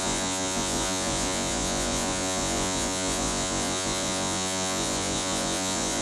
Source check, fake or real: fake